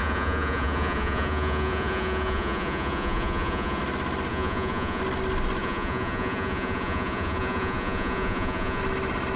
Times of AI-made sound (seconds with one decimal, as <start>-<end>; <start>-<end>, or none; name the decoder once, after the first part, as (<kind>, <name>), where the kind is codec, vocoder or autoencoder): 0.0-3.8 (vocoder, Vocos); 4.3-5.0; 5.6-8.8